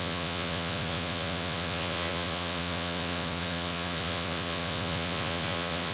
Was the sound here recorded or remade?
remade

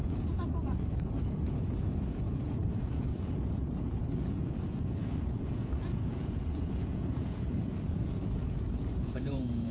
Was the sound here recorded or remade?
remade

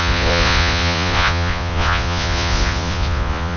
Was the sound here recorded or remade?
remade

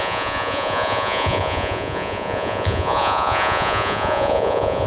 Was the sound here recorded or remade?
remade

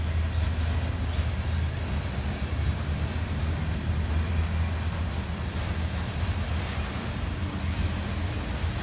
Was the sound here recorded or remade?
recorded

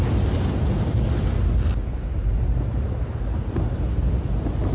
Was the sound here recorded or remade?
recorded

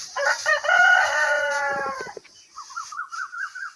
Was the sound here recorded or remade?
remade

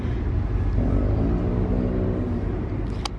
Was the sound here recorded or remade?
recorded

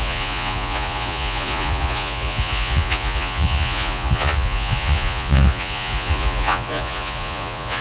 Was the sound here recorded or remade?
remade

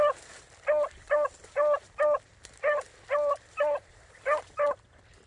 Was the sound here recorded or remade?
recorded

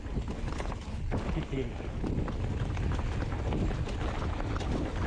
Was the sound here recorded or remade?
recorded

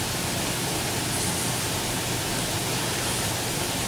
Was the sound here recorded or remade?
recorded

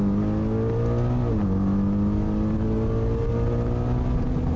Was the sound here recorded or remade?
recorded